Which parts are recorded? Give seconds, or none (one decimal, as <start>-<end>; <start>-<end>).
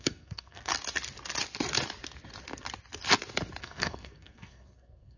0.7-3.6